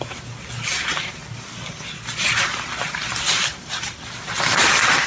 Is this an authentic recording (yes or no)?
yes